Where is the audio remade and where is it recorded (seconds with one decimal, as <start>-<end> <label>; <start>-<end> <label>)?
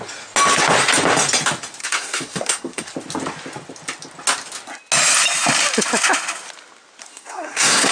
0.0-1.8 recorded; 1.8-2.9 remade; 2.9-7.1 recorded; 7.1-7.9 remade